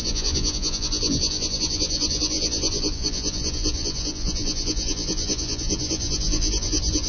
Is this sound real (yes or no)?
no